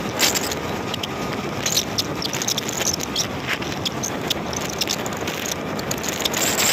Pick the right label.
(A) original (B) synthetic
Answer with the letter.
A